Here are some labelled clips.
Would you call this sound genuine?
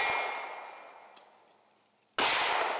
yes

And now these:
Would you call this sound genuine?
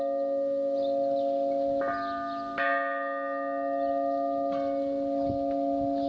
yes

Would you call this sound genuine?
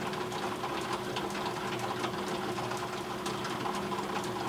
yes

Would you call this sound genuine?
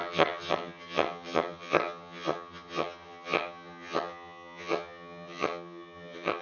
no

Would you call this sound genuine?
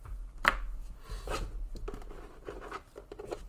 yes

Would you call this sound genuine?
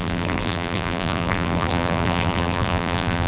no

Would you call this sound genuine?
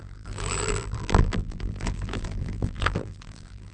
no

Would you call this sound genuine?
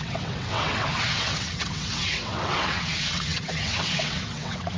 no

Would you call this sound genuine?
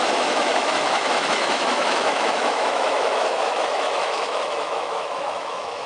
no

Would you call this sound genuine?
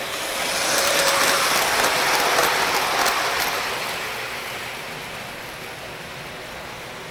yes